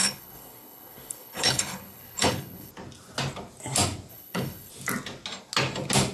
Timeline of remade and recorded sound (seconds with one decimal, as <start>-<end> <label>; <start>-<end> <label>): 0.0-2.7 remade; 2.7-4.1 recorded; 4.1-4.7 remade; 4.7-6.1 recorded